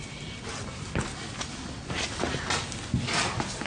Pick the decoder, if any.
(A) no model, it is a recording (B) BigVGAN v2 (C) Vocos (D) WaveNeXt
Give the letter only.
A